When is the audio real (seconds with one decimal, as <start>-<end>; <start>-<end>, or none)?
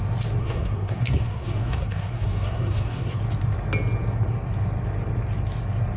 0.0-0.4; 3.2-6.0